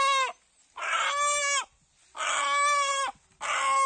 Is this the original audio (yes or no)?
yes